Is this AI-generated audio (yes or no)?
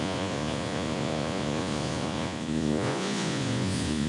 yes